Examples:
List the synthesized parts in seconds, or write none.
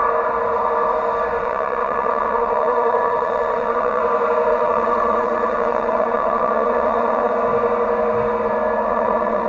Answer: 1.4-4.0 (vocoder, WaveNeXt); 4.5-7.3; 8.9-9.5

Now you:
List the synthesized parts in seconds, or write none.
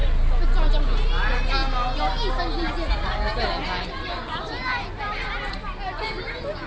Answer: none